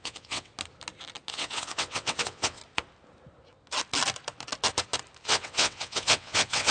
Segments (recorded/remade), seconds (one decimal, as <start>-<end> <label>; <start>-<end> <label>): 0.0-0.5 remade; 0.5-1.3 recorded; 1.3-2.6 remade; 2.6-5.2 recorded; 5.2-6.7 remade